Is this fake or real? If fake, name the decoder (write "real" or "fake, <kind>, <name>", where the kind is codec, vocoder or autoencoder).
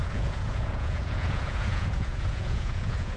fake, vocoder, Vocos